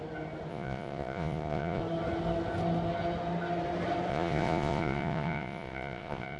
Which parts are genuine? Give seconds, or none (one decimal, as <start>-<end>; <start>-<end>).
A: 0.0-0.5; 1.8-4.1